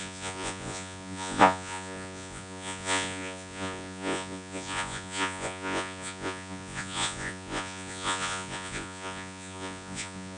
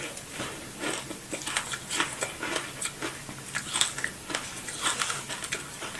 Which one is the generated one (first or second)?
first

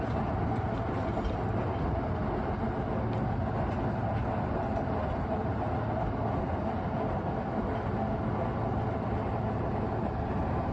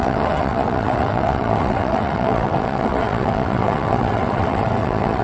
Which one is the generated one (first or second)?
second